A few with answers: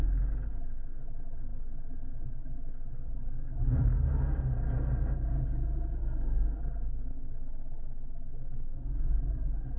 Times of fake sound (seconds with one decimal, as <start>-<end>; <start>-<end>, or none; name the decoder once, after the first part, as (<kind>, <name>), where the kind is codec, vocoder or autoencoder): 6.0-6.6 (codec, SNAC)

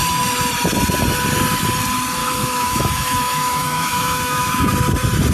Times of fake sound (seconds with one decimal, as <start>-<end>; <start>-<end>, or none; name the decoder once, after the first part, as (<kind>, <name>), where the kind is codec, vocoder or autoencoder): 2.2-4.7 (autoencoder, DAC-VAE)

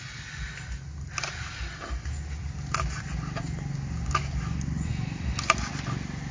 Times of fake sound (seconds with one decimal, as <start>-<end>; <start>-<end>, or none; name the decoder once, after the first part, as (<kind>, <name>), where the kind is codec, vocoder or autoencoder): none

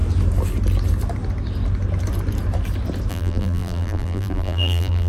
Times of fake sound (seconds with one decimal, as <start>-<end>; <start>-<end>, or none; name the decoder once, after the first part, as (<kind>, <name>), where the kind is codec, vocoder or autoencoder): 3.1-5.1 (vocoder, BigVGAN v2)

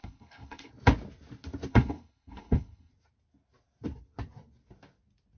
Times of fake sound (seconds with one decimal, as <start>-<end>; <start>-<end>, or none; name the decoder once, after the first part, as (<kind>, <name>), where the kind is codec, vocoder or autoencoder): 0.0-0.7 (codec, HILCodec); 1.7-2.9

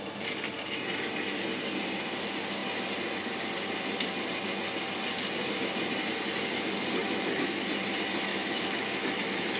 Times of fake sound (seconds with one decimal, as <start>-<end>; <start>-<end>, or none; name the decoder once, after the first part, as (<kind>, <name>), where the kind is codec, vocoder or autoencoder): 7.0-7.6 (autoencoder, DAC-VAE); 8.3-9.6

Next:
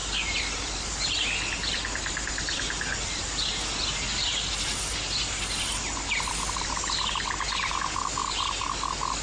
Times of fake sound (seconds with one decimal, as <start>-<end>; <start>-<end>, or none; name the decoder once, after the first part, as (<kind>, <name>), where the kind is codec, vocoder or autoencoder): none

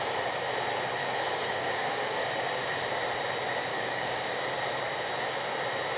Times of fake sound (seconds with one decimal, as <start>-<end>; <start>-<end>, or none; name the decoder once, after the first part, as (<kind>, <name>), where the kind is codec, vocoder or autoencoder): 1.0-2.3 (codec, DAC); 3.7-4.3